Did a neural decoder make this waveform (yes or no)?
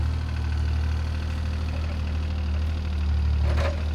no